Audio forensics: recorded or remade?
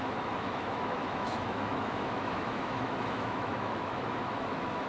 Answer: remade